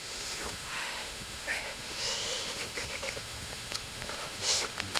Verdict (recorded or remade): remade